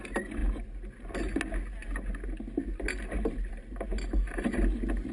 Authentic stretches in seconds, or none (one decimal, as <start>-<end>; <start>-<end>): 0.0-5.1